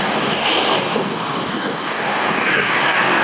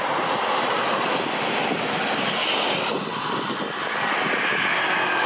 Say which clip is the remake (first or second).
first